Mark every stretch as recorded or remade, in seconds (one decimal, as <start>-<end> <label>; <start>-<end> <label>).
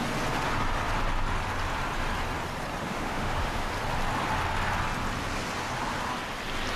0.0-2.8 recorded; 2.8-3.7 remade; 3.7-6.8 recorded